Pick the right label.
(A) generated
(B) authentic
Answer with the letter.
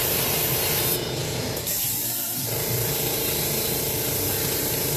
A